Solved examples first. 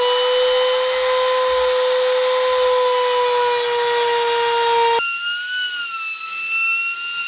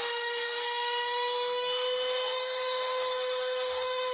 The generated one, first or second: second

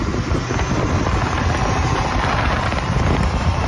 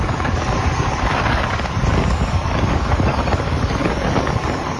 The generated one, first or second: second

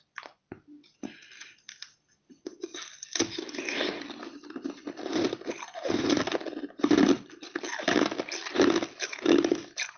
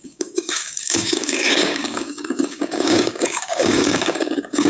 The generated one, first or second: second